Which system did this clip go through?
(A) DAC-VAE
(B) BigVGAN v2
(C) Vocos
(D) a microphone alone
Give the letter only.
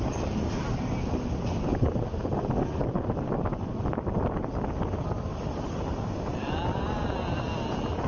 D